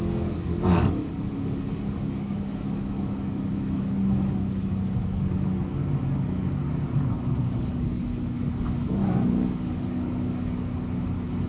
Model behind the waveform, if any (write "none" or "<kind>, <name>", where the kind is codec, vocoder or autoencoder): codec, DAC